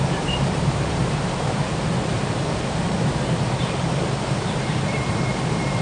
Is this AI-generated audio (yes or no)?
yes